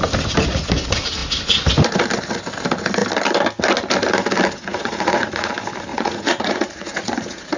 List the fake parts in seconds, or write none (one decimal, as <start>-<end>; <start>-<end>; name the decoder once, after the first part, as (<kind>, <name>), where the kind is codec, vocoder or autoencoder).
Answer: 4.7-5.5 (vocoder, Vocos); 5.9-7.6